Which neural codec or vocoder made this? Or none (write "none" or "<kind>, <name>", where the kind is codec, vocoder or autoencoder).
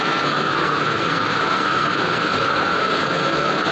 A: codec, SNAC